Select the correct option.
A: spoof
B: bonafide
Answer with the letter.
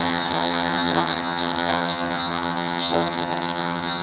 A